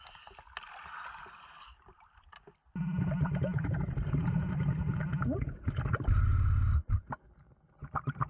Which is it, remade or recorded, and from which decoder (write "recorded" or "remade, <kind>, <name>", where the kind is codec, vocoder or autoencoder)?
recorded